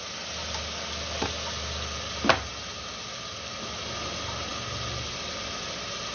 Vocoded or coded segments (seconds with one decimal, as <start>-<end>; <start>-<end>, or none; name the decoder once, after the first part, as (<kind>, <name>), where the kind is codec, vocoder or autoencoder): none